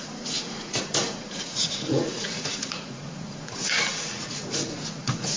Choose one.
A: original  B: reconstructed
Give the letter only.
B